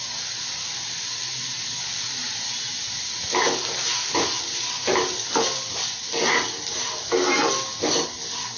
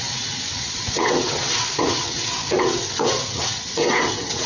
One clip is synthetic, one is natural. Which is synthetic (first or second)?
second